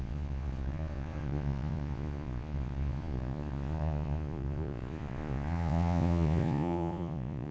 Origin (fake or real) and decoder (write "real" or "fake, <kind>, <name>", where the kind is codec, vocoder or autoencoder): fake, vocoder, Vocos